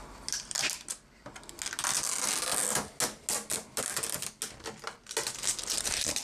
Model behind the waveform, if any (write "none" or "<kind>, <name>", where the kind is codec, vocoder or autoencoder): none